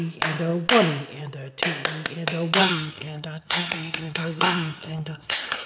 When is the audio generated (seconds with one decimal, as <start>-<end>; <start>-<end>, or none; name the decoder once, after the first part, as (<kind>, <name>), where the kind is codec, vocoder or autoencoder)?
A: 2.6-5.7 (codec, SNAC)